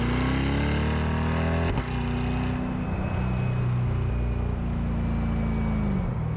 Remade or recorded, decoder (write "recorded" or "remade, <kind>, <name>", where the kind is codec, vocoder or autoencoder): recorded